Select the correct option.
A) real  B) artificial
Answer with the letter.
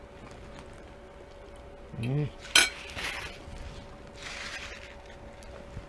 A